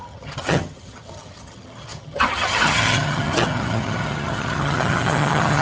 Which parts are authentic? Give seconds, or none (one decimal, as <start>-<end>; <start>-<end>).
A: none